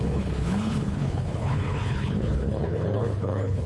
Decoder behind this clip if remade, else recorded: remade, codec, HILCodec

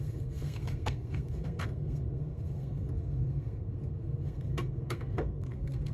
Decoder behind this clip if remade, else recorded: remade, codec, SNAC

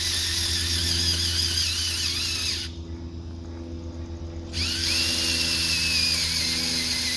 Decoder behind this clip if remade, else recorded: recorded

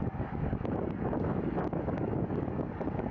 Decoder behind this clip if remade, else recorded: remade, codec, DAC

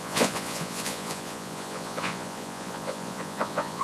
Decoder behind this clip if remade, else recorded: remade, vocoder, Vocos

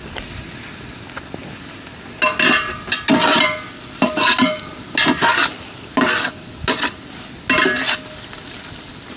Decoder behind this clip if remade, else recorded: recorded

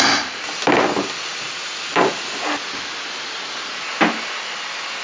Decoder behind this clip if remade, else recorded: recorded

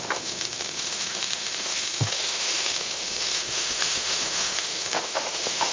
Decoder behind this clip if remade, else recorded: remade, autoencoder, DAC-VAE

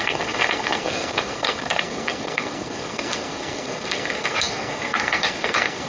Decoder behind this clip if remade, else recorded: remade, codec, SNAC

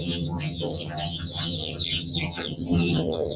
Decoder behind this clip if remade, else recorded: remade, vocoder, HiFi-GAN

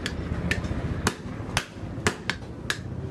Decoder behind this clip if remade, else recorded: recorded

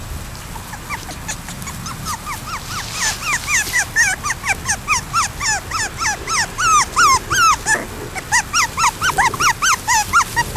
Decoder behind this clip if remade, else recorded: recorded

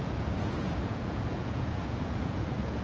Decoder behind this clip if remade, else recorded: remade, vocoder, Vocos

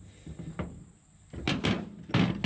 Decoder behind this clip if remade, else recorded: recorded